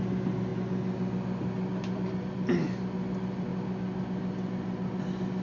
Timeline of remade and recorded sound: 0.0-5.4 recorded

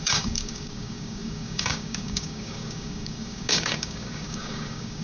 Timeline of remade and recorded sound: 0.0-5.0 remade

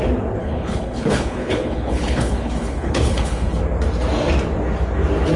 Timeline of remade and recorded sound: 0.0-0.4 recorded; 0.4-3.6 remade; 3.6-5.4 recorded

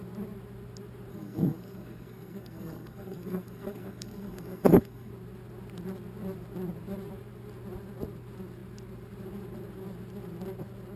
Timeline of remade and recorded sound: 0.0-1.1 recorded; 1.1-5.1 remade; 5.1-11.0 recorded